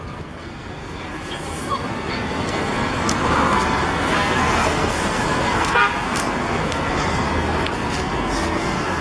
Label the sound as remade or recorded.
remade